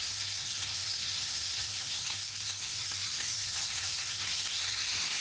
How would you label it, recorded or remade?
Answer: remade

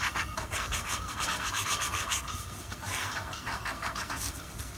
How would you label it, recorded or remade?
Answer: remade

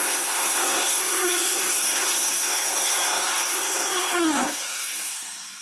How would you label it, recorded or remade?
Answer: remade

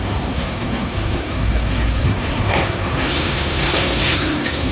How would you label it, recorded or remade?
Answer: remade